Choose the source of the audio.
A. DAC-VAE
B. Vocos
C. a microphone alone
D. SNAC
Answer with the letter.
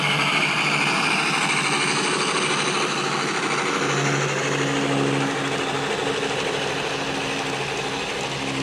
C